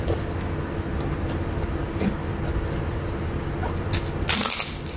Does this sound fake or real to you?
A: real